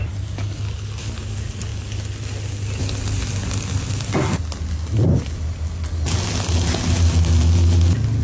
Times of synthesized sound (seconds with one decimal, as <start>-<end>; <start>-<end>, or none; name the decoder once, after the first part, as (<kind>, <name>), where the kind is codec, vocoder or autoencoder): none